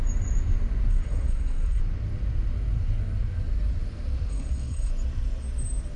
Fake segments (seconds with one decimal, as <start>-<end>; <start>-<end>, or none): 0.9-1.8; 4.3-4.9